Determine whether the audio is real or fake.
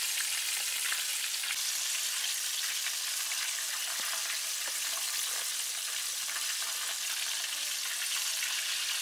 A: real